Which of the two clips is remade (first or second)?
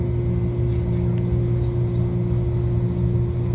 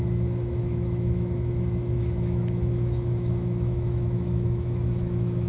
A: second